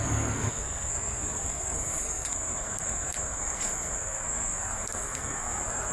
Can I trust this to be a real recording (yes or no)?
no